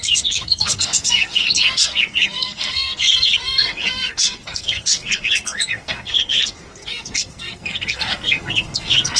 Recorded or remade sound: remade